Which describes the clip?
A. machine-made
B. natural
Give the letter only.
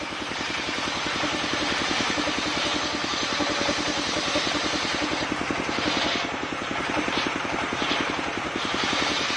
A